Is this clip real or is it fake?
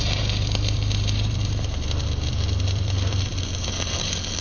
fake